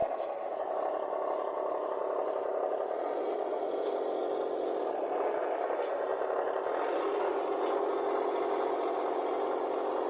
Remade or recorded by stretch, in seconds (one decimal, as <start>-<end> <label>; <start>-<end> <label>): 0.0-10.1 recorded